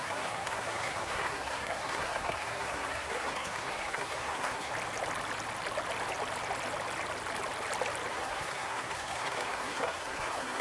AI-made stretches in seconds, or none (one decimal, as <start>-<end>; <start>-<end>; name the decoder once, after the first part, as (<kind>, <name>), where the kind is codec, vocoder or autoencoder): 0.0-4.7 (codec, SNAC); 8.1-10.6